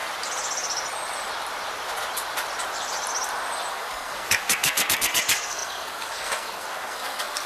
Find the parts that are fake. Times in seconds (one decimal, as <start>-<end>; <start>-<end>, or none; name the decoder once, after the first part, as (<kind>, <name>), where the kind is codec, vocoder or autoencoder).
3.7-7.5 (codec, SNAC)